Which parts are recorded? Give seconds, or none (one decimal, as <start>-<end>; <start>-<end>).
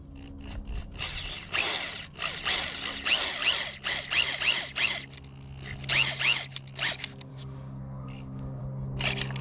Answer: 0.0-7.3; 8.6-9.4